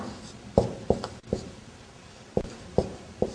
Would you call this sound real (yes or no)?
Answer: yes